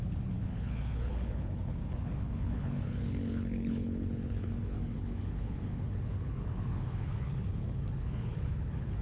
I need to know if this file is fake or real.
fake